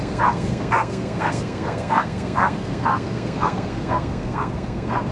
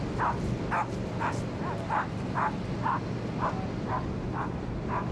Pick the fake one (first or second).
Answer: first